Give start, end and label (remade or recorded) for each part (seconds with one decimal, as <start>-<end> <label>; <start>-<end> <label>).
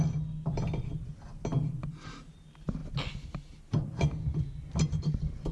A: 0.0-1.5 recorded; 1.5-2.3 remade; 2.3-5.5 recorded